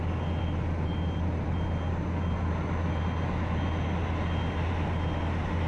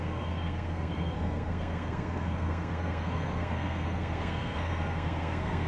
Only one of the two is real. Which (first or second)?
first